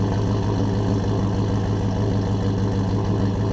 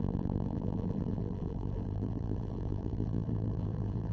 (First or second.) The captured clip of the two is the first